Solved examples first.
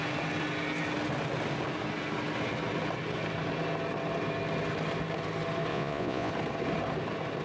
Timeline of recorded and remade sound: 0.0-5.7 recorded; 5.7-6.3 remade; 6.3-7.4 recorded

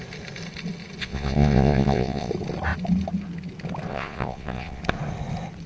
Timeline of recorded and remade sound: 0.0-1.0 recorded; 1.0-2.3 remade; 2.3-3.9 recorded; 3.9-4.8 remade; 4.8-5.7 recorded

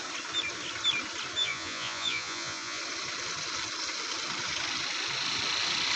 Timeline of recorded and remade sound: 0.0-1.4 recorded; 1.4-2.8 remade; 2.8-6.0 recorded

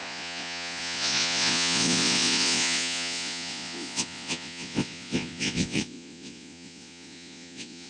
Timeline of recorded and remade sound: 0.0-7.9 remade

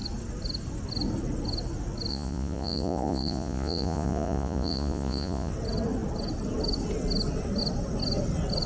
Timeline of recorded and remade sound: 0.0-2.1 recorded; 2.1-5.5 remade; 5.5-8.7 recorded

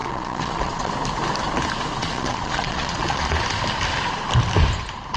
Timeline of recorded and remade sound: 0.0-0.9 remade; 0.9-2.0 recorded; 2.0-3.4 remade; 3.4-5.2 recorded

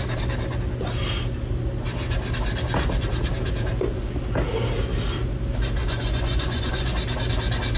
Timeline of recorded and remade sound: 0.0-5.8 recorded; 5.8-6.9 remade; 6.9-7.8 recorded

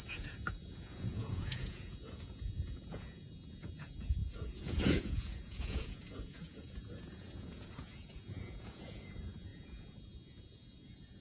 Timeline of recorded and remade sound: 0.0-11.2 remade